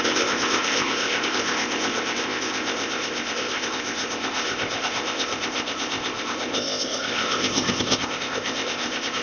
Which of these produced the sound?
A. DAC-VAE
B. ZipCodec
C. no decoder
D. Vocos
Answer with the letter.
B